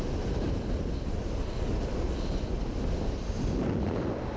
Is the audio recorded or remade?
recorded